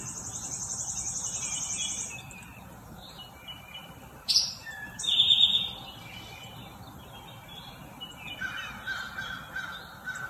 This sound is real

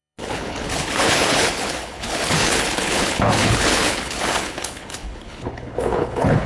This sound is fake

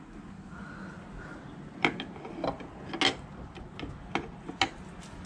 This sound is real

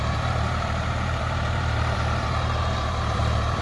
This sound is fake